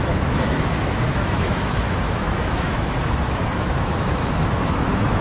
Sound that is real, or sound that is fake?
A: fake